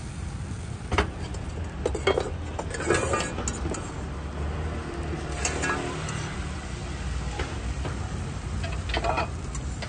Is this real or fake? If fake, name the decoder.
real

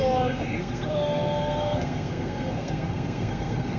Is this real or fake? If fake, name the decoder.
fake, codec, SNAC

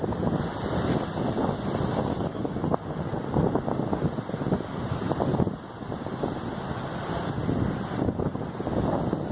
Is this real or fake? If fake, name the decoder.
real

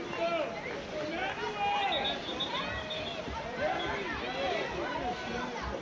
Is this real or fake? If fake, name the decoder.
real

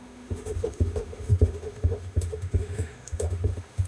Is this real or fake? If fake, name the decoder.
fake, autoencoder, DAC-VAE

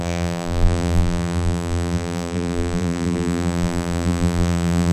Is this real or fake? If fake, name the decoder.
fake, vocoder, BigVGAN v2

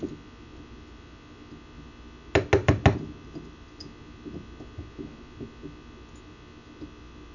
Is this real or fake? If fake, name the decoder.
real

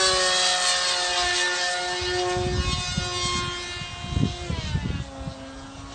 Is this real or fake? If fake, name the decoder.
real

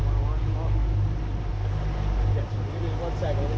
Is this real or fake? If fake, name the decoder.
real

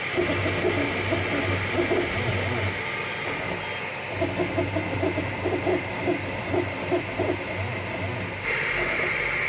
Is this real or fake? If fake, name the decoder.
real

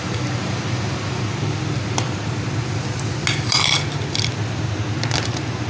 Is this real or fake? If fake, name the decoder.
real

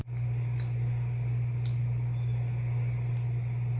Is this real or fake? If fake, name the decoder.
real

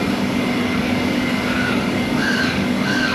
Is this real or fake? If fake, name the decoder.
fake, codec, DAC